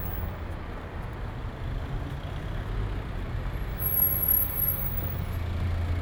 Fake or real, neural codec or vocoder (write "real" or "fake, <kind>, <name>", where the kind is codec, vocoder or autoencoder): real